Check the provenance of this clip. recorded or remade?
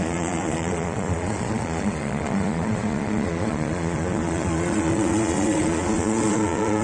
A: remade